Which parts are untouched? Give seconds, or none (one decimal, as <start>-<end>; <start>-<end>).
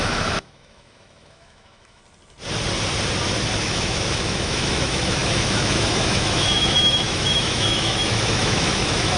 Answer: 2.0-3.6